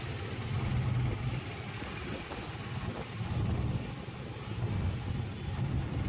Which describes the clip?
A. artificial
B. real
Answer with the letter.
B